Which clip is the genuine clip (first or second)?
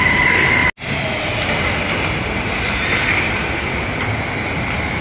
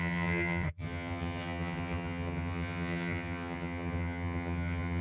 first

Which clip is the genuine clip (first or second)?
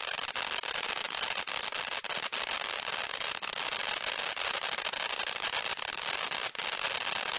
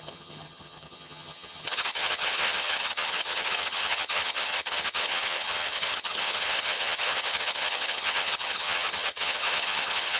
first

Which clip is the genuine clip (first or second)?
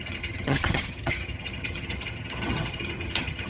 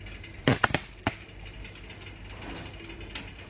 second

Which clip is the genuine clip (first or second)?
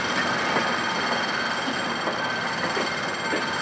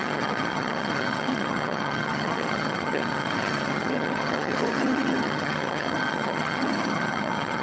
first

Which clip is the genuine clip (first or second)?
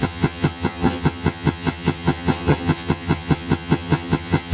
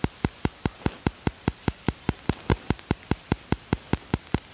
second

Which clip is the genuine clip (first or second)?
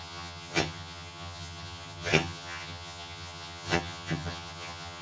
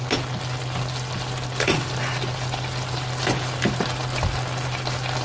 second